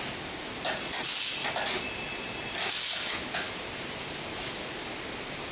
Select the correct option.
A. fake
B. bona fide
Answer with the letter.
B